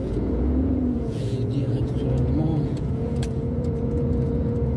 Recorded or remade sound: remade